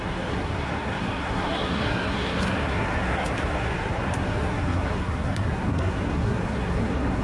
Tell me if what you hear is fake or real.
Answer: fake